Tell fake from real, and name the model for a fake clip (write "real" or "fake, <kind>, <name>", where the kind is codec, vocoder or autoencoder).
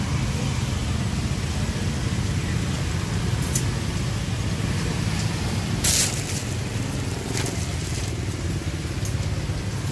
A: real